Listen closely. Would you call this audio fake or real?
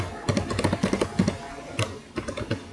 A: real